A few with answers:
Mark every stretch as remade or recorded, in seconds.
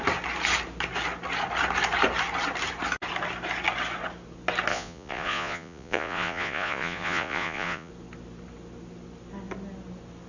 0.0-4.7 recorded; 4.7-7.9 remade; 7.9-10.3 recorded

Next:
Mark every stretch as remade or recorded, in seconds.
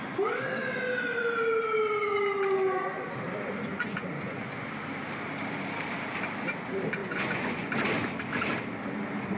0.0-3.7 recorded; 3.7-4.7 remade; 4.7-7.0 recorded; 7.0-7.7 remade; 7.7-9.4 recorded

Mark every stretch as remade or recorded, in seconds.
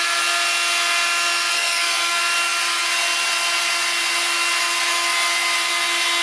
0.0-1.5 recorded; 1.5-2.2 remade; 2.2-6.2 recorded